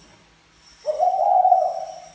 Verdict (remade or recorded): recorded